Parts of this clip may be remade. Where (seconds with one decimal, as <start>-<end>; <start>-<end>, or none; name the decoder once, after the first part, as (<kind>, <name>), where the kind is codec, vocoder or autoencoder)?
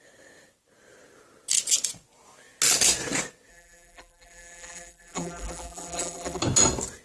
3.5-6.4 (vocoder, BigVGAN v2)